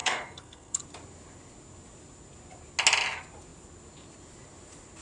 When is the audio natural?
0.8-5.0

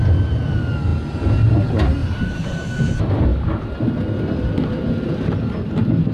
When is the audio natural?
0.0-2.0; 2.9-6.1